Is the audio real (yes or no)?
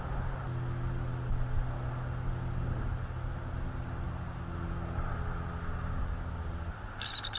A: yes